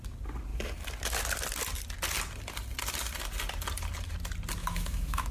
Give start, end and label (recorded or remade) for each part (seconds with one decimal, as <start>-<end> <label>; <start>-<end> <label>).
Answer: 0.0-4.6 recorded; 4.6-5.3 remade